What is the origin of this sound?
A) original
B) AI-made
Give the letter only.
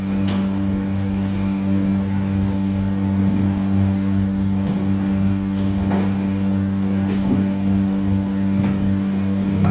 B